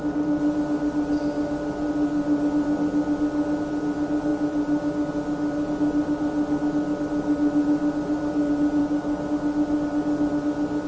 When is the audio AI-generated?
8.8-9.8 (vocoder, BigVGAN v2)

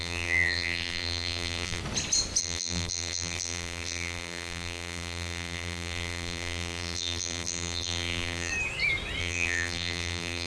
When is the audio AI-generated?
0.0-1.8 (vocoder, BigVGAN v2); 2.4-8.5; 9.2-10.5

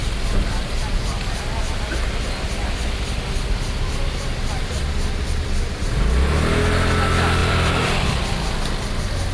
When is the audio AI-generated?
7.4-8.2 (vocoder, BigVGAN v2)

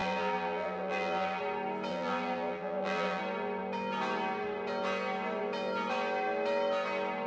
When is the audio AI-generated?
0.0-1.4 (vocoder, BigVGAN v2); 1.9-3.2